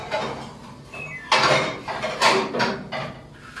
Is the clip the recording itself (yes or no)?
yes